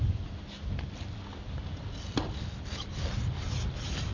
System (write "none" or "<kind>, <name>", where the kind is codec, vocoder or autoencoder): none